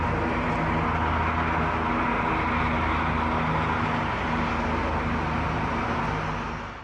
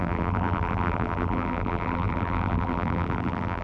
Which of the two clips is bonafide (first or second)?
first